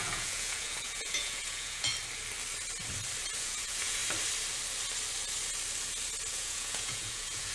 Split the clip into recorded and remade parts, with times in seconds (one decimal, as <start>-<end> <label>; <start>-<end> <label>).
0.0-1.9 remade; 1.9-3.4 recorded; 3.4-4.0 remade; 4.0-6.3 recorded; 6.3-7.5 remade

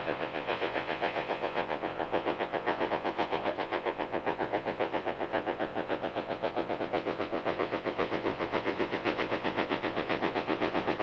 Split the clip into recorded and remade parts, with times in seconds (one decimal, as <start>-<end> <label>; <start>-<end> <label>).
0.0-11.0 remade